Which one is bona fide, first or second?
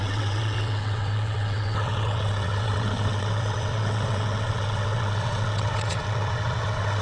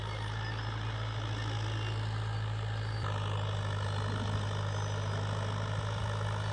second